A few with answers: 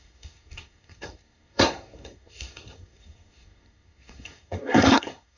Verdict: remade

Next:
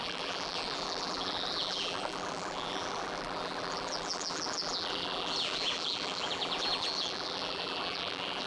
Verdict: remade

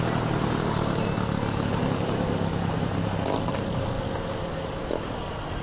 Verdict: remade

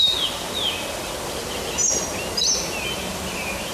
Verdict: recorded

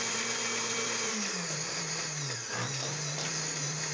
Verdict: remade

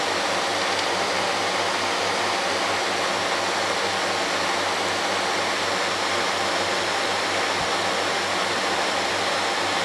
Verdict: recorded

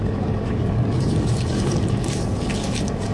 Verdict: remade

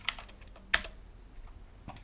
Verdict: recorded